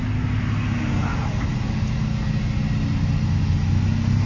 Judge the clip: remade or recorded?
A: recorded